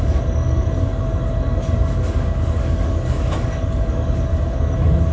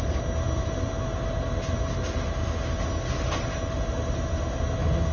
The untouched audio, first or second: second